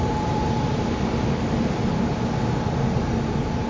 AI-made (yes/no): no